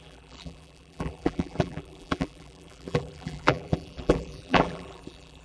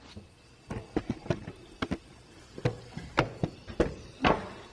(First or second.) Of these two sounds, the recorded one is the second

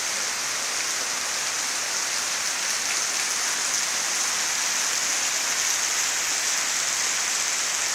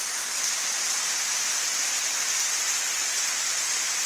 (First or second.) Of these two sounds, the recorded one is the first